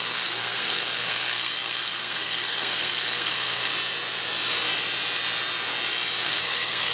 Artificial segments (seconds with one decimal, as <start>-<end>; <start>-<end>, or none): 0.0-3.7; 6.2-6.9